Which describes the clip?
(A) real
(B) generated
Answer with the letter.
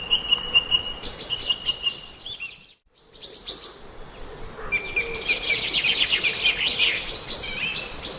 A